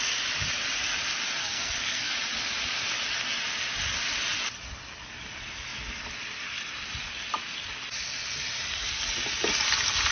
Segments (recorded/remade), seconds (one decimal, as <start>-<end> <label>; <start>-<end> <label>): 0.0-1.4 recorded; 1.4-2.1 remade; 2.1-10.1 recorded